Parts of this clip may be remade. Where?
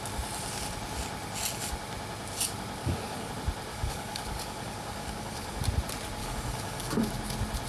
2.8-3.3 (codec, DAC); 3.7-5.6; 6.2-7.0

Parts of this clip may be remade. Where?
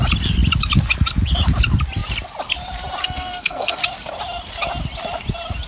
3.0-3.8 (codec, SNAC)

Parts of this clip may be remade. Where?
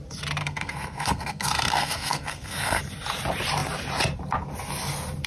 0.4-2.8 (codec, SNAC)